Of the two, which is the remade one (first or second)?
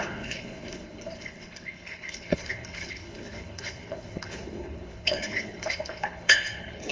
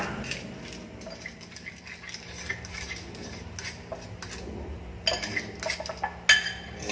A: first